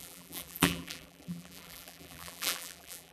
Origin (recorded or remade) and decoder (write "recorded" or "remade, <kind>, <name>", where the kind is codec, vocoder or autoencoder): remade, vocoder, BigVGAN v2